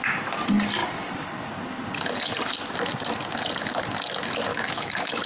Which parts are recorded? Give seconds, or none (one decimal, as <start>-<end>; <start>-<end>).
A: 0.0-4.5